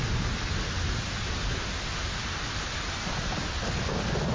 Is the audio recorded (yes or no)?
yes